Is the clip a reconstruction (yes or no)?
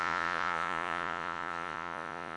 yes